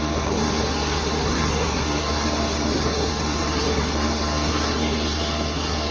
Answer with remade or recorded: remade